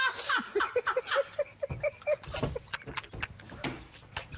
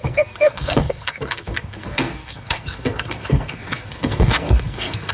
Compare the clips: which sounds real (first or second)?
first